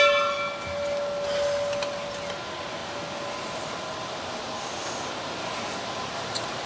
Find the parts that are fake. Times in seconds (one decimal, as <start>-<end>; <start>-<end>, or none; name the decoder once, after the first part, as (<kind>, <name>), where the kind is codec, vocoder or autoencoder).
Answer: none